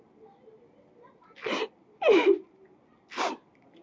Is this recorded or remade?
recorded